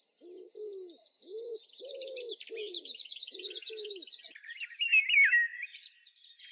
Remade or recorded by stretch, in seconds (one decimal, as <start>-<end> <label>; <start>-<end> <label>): 0.0-1.5 recorded; 1.5-2.2 remade; 2.2-2.7 recorded; 2.7-3.9 remade; 3.9-5.5 recorded; 5.5-6.5 remade